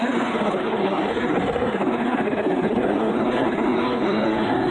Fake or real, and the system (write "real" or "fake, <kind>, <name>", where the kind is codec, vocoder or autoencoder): fake, codec, SNAC